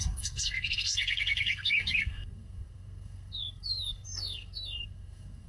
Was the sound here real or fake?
fake